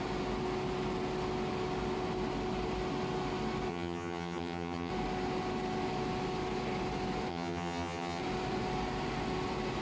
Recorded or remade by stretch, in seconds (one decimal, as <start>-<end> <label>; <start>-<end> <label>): 0.0-3.7 recorded; 3.7-4.9 remade; 4.9-7.3 recorded; 7.3-8.2 remade; 8.2-9.8 recorded